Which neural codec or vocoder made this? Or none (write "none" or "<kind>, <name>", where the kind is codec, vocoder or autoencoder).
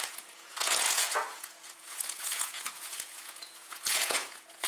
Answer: vocoder, Vocos